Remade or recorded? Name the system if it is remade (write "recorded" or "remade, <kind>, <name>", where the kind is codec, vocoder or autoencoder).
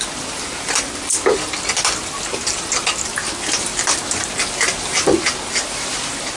recorded